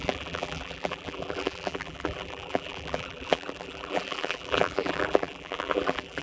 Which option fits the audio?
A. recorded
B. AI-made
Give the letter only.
B